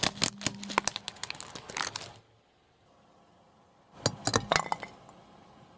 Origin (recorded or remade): recorded